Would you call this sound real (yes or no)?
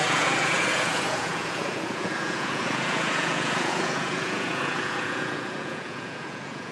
no